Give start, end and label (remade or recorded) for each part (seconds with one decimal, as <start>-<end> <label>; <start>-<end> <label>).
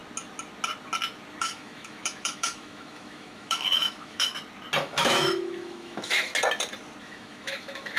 0.0-1.4 recorded; 1.4-4.3 remade; 4.3-4.8 recorded; 4.8-6.3 remade; 6.3-7.0 recorded; 7.0-8.0 remade